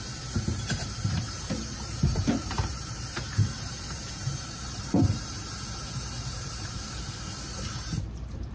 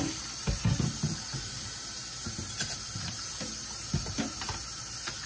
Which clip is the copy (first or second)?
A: first